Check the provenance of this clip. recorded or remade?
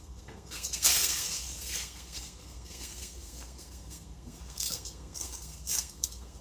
remade